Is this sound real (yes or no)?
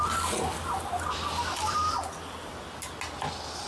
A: yes